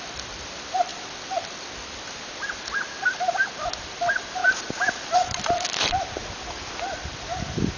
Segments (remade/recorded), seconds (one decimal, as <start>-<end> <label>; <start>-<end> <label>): 0.0-4.4 remade; 4.4-4.9 recorded; 4.9-6.2 remade; 6.2-6.8 recorded; 6.8-7.8 remade